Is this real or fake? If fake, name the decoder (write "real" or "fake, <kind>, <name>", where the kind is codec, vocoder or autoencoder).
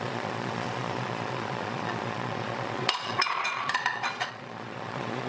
fake, vocoder, Vocos